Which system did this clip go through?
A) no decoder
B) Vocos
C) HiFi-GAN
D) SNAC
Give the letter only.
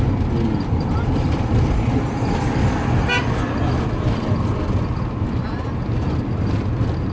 A